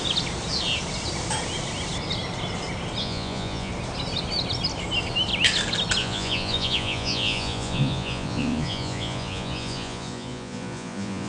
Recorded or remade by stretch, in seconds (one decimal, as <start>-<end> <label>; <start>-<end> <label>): 0.0-3.0 recorded; 3.0-3.7 remade; 3.7-6.0 recorded; 6.0-11.3 remade